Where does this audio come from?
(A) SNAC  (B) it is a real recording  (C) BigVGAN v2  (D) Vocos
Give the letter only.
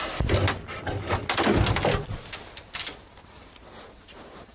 B